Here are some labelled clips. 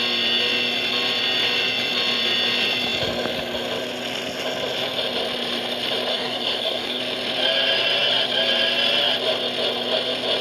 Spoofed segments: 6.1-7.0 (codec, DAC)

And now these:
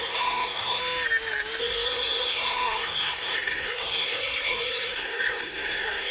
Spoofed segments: 0.0-0.8 (codec, SNAC); 1.6-6.1